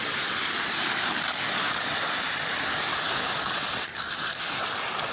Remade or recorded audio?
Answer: remade